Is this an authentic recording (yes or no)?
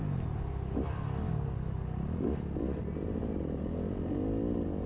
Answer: yes